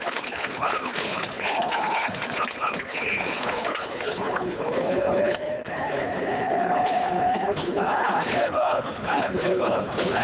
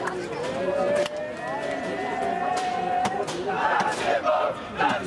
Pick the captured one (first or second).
second